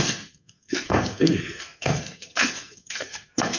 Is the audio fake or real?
fake